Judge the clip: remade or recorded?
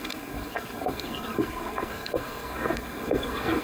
remade